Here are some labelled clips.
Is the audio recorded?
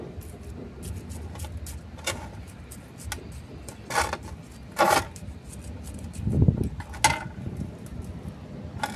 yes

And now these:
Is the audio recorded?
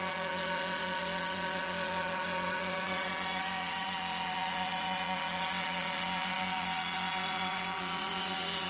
no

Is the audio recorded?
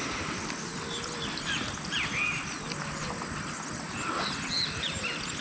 no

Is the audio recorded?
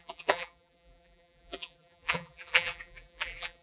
no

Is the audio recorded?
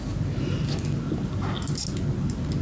yes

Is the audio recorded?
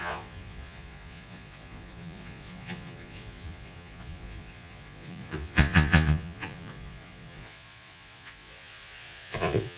no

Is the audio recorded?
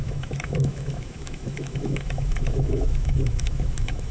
no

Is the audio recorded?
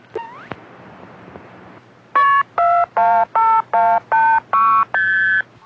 yes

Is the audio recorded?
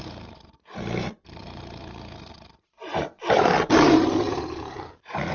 no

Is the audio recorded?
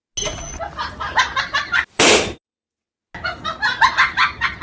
yes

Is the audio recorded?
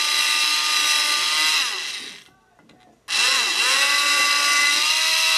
yes